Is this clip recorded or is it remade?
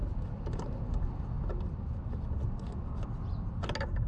recorded